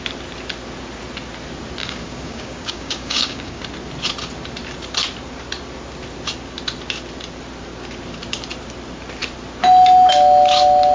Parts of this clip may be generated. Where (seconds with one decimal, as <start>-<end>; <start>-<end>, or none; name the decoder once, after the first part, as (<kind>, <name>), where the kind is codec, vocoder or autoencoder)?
1.8-3.6 (codec, DAC)